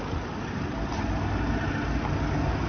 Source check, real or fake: real